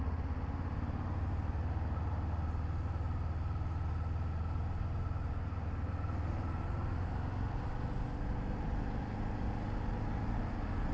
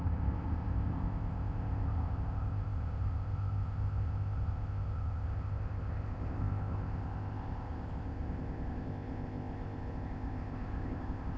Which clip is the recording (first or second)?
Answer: first